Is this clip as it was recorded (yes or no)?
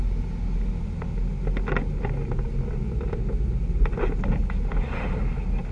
yes